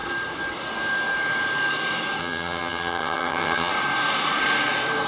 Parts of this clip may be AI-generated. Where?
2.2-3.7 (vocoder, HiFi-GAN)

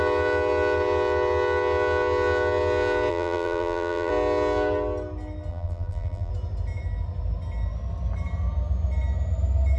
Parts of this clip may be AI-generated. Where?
3.1-4.1 (vocoder, BigVGAN v2); 5.5-6.3

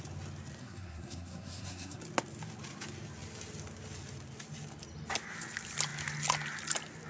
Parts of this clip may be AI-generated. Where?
0.6-2.0 (codec, SNAC)

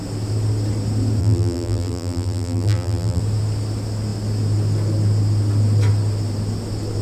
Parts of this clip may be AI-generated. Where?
1.2-3.2 (vocoder, BigVGAN v2)

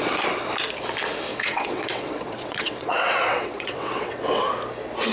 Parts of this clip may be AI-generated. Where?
1.3-4.4 (vocoder, WaveNeXt)